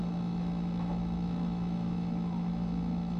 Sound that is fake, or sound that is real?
fake